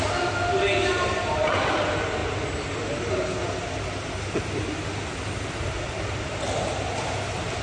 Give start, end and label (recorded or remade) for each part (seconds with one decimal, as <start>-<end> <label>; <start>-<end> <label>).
0.0-7.6 recorded